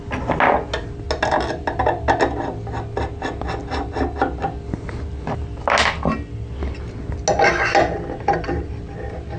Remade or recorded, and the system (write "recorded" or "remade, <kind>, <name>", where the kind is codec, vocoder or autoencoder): recorded